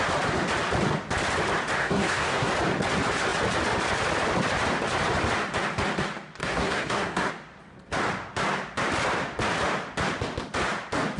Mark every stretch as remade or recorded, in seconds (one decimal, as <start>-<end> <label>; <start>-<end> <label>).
0.0-1.8 recorded; 1.8-2.5 remade; 2.5-6.4 recorded; 6.4-7.3 remade; 7.3-11.2 recorded